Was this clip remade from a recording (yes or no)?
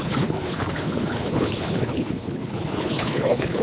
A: yes